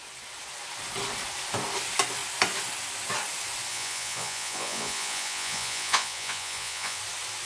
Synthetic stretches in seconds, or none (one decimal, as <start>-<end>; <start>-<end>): 3.7-7.0